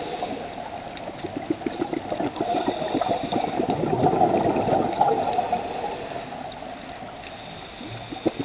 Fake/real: real